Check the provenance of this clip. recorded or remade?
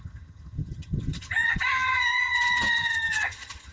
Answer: remade